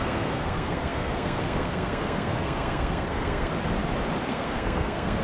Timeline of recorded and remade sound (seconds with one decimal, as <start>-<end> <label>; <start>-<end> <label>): 0.0-3.5 remade; 3.5-4.3 recorded; 4.3-5.2 remade